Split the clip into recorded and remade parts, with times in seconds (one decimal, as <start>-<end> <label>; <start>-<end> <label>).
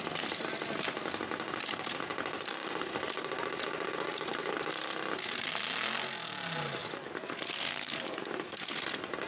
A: 0.0-6.8 recorded; 6.8-8.8 remade; 8.8-9.3 recorded